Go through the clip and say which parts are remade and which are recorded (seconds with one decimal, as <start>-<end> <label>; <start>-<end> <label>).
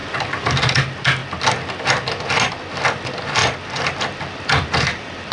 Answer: 0.0-0.7 remade; 0.7-3.4 recorded; 3.4-5.3 remade